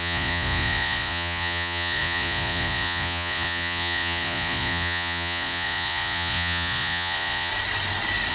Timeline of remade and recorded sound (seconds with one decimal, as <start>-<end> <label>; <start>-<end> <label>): 0.0-7.5 remade; 7.5-8.3 recorded